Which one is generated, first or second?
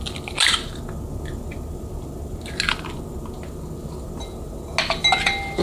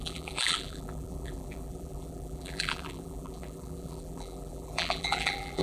second